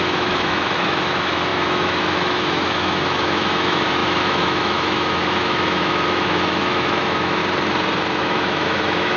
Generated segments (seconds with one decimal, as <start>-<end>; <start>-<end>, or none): 0.0-7.4; 8.2-9.2